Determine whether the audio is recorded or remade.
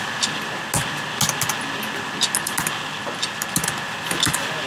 recorded